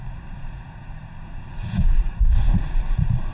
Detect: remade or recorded remade